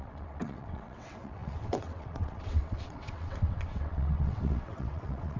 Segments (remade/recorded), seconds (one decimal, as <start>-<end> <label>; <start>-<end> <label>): 0.0-5.4 remade